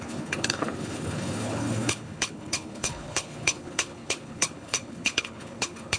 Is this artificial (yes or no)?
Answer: yes